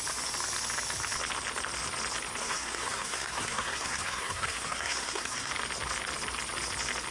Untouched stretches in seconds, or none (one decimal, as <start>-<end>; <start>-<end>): 0.0-2.4; 5.5-7.1